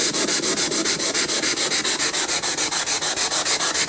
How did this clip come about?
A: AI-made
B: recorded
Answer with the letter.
B